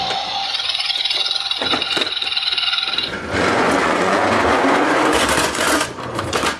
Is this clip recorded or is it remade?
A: remade